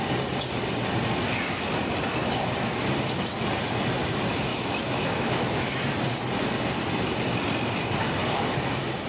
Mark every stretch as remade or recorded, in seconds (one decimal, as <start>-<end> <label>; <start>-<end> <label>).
0.0-4.5 recorded; 4.5-5.8 remade; 5.8-9.1 recorded